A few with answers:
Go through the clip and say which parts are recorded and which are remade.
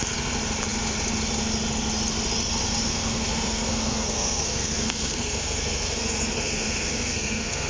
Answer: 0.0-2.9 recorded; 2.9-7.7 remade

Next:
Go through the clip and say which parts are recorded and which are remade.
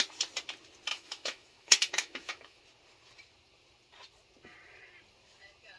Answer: 0.0-0.9 recorded; 0.9-2.6 remade; 2.6-5.8 recorded